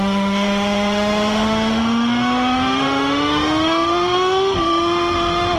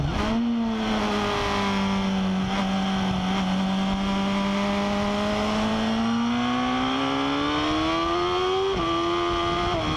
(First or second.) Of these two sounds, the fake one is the first